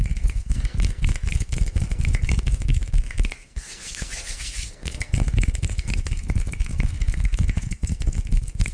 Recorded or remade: remade